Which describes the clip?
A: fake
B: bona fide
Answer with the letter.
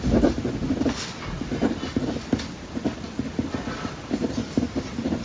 B